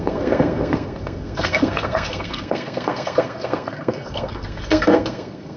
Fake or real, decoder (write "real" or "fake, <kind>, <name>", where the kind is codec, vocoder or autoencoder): fake, codec, SNAC